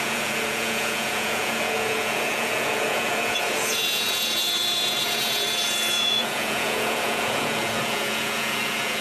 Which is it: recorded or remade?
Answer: remade